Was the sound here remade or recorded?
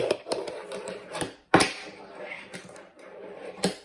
remade